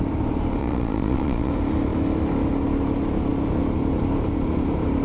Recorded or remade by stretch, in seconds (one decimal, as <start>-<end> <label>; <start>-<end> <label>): 0.0-0.6 recorded; 0.6-1.5 remade; 1.5-5.0 recorded